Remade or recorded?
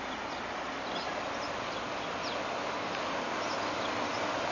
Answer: recorded